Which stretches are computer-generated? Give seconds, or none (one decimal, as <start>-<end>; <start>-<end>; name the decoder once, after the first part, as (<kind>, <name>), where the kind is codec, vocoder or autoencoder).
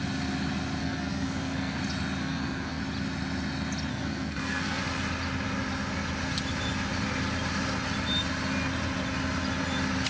0.8-1.8 (codec, SNAC); 2.2-2.8; 3.9-4.8